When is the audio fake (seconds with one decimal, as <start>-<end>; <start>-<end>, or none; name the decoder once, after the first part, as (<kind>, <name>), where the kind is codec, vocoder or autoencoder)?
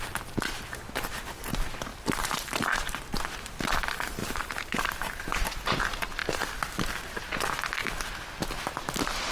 1.9-3.0 (vocoder, BigVGAN v2); 4.2-5.8